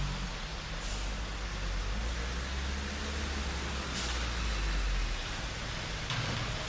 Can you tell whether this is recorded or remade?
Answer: recorded